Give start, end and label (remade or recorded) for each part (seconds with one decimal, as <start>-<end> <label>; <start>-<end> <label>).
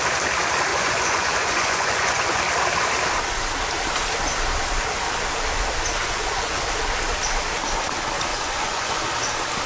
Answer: 0.0-0.7 recorded; 0.7-2.4 remade; 2.4-6.0 recorded; 6.0-6.6 remade; 6.6-8.3 recorded; 8.3-9.0 remade; 9.0-9.7 recorded